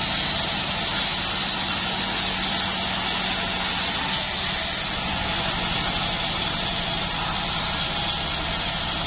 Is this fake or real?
real